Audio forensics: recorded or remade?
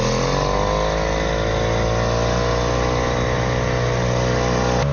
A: recorded